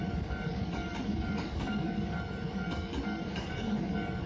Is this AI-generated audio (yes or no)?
yes